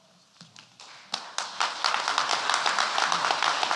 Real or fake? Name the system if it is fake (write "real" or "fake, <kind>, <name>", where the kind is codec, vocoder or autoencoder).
real